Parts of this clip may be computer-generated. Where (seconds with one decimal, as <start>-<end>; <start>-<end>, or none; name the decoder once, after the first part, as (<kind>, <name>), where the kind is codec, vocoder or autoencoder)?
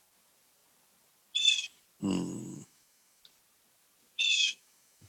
2.5-3.2 (autoencoder, DAC-VAE); 4.3-5.1